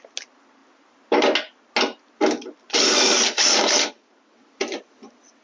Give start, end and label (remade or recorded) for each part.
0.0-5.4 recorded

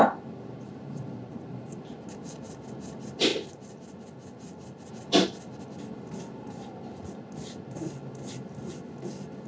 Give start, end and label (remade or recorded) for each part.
0.0-9.5 recorded